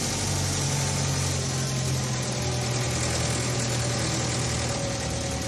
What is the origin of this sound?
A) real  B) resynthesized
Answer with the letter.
A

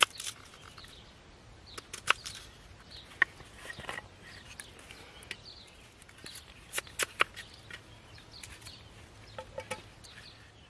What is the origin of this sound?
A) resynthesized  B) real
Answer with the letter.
B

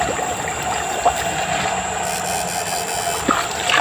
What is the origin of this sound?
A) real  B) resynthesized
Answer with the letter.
A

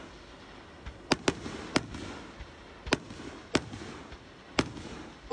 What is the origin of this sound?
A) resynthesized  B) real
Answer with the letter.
B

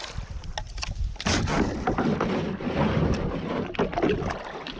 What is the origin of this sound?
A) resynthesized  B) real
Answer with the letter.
B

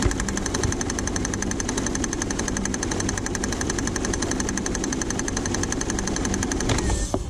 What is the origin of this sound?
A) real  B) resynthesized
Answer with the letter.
A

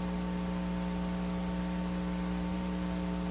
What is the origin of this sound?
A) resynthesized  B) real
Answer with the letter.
B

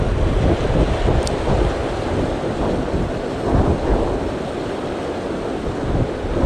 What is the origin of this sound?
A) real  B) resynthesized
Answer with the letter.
A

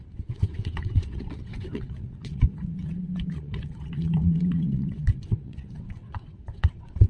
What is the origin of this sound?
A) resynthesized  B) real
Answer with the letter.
A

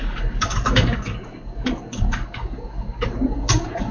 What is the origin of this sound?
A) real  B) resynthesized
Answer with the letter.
B